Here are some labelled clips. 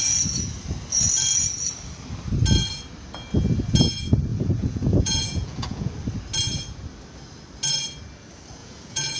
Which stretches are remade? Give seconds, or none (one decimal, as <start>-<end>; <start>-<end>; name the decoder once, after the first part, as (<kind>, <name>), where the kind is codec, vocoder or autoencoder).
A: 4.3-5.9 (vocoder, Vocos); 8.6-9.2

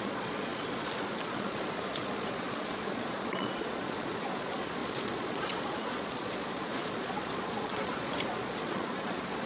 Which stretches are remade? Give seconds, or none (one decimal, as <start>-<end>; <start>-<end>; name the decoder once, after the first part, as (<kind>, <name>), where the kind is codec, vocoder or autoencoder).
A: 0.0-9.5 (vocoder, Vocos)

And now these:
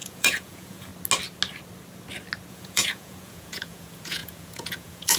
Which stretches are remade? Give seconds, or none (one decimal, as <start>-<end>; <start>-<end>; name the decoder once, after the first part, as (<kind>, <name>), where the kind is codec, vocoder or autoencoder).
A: 0.0-0.9 (vocoder, Vocos); 2.5-5.2

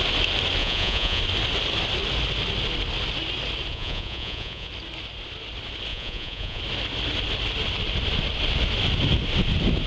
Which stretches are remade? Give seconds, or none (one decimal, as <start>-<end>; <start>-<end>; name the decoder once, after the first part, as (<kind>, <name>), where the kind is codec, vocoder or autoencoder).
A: 0.6-1.2 (vocoder, Vocos); 3.7-4.7; 5.9-6.6

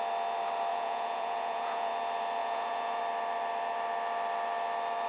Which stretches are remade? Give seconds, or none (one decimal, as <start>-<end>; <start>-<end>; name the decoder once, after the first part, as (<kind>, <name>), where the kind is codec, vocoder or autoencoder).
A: 0.7-1.9 (vocoder, Vocos); 2.4-3.0

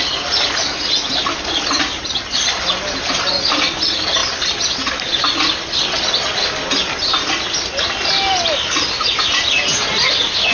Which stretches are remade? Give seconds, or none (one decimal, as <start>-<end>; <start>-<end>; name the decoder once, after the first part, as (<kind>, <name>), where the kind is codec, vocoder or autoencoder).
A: none